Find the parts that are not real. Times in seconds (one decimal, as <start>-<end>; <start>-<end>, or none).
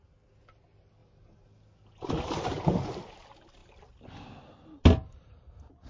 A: none